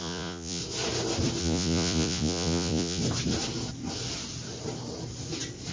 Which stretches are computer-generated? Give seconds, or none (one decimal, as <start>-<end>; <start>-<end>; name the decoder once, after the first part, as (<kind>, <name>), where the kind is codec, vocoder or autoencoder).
0.0-0.6 (vocoder, Vocos); 1.4-3.0